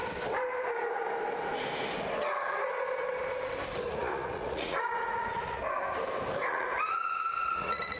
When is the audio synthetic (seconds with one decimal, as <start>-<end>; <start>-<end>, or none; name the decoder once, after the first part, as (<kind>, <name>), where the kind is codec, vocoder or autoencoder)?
3.9-5.6 (vocoder, Vocos); 6.5-8.0